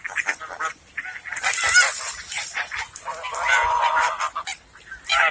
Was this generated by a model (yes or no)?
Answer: yes